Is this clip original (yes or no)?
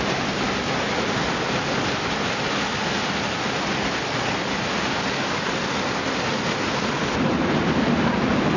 yes